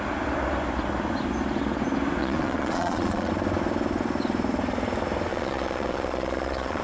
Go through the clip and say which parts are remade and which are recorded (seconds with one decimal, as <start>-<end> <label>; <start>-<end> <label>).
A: 0.0-2.2 recorded; 2.2-3.3 remade; 3.3-5.3 recorded; 5.3-6.8 remade